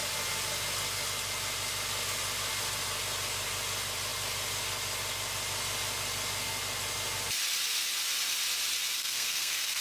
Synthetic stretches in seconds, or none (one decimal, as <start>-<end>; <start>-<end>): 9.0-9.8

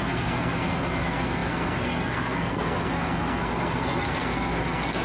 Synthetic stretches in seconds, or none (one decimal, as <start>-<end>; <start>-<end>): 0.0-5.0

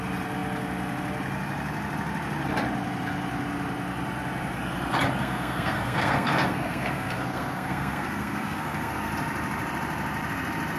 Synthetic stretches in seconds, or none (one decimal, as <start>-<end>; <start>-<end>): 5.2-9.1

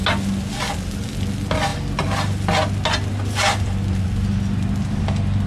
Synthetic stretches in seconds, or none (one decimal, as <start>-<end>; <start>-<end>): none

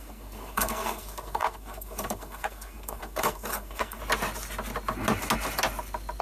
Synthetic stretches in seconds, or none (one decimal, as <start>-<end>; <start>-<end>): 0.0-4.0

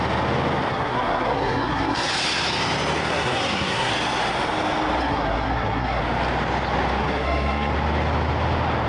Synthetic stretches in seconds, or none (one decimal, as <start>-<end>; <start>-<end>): 0.7-2.1; 3.0-3.9; 5.0-6.0; 7.0-7.7